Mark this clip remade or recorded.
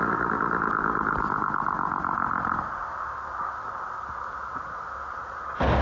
recorded